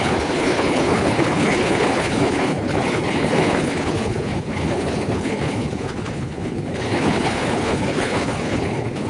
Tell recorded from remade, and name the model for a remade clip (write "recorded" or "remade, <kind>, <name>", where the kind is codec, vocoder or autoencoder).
remade, codec, HILCodec